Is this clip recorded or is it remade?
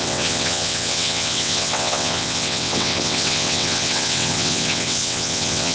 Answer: remade